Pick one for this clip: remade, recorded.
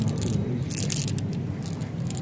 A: recorded